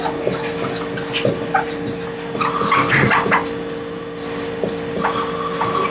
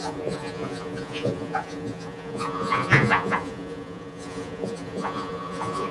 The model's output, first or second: second